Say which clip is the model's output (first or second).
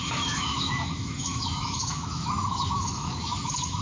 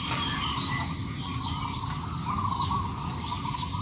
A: first